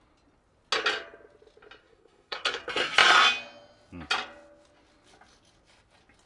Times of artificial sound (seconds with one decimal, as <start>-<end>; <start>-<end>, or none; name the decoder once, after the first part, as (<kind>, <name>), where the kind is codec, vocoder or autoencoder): 1.8-2.6 (codec, SNAC)